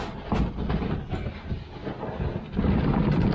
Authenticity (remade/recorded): recorded